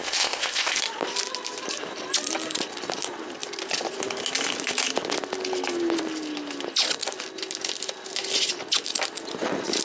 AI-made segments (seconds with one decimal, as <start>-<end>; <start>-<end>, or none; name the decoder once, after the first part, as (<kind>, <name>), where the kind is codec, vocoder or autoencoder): 0.0-0.8 (codec, ZipCodec)